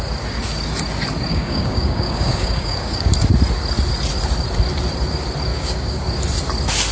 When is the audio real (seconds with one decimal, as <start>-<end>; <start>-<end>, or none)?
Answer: 0.0-1.3; 3.1-5.5; 6.0-6.9